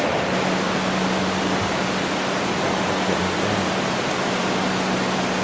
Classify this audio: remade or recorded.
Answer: recorded